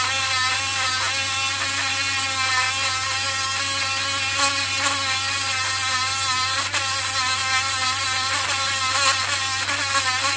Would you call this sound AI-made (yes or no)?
no